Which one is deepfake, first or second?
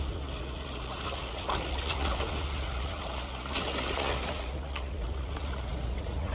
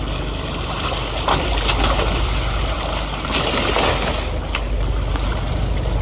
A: first